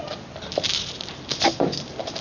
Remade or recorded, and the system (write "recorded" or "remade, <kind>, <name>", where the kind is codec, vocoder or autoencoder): recorded